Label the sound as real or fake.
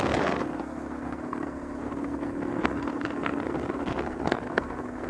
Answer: fake